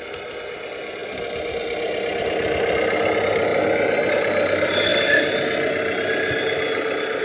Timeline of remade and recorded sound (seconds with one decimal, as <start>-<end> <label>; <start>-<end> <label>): 0.0-7.2 recorded